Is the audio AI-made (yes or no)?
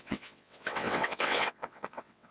yes